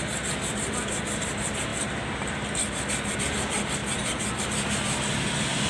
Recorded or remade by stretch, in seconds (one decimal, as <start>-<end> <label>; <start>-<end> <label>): 0.0-5.7 recorded